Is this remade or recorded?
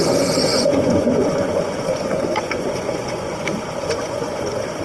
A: remade